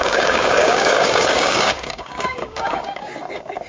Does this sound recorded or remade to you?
remade